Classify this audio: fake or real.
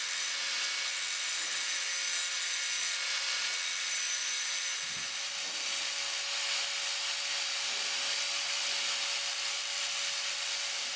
real